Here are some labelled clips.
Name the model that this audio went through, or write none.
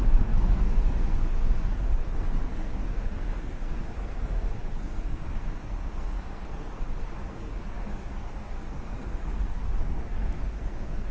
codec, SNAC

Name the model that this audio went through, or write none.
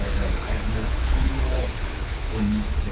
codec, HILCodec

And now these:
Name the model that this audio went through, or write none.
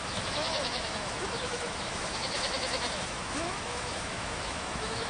autoencoder, DAC-VAE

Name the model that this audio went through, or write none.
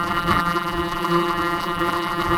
vocoder, BigVGAN v2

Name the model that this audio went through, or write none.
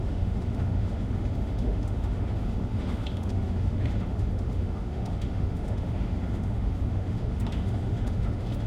autoencoder, DAC-VAE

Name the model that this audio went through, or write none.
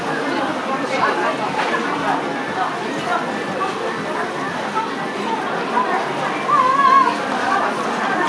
none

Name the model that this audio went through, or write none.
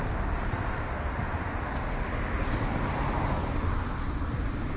none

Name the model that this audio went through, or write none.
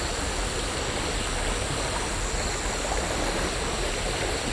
none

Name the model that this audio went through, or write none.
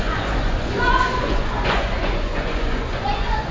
vocoder, Vocos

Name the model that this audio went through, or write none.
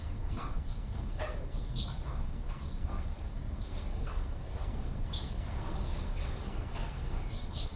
codec, SNAC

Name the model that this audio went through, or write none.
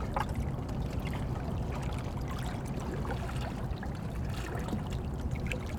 none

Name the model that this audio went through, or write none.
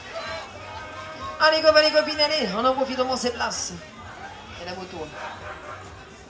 none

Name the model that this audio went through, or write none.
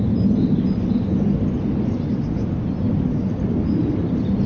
none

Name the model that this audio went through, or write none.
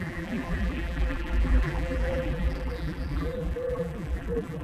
vocoder, BigVGAN v2